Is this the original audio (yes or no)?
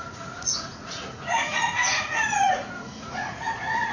no